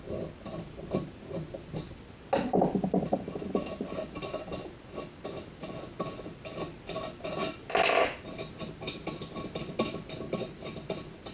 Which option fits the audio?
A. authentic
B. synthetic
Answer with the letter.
A